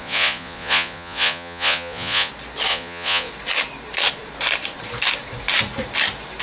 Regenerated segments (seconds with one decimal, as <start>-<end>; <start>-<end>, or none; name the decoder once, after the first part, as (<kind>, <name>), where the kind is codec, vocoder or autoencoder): 0.0-2.3 (vocoder, Vocos); 2.7-3.3